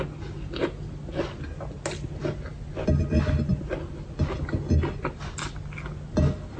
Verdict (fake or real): real